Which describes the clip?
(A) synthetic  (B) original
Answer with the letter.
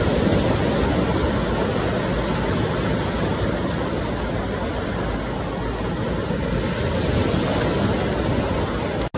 B